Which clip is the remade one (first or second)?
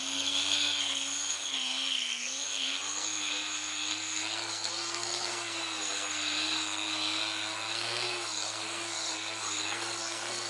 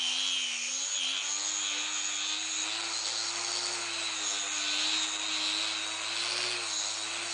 first